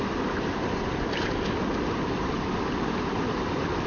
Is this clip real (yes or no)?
yes